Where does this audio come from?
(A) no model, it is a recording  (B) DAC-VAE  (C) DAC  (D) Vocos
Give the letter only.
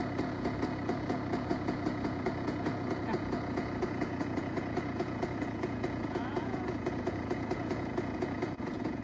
D